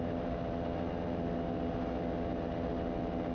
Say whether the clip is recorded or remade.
recorded